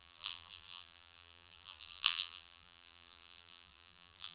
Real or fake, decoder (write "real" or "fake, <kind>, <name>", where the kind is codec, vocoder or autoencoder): fake, vocoder, BigVGAN v2